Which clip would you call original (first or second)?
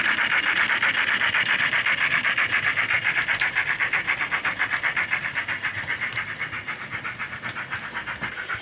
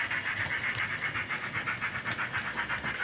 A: second